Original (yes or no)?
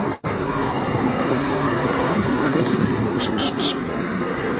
no